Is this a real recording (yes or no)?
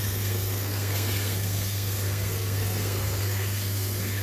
no